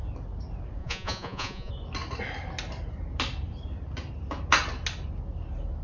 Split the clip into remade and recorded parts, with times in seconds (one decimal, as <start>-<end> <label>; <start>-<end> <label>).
0.0-0.8 recorded; 0.8-1.7 remade; 1.7-5.8 recorded